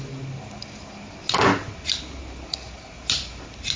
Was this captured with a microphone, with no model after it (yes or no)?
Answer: yes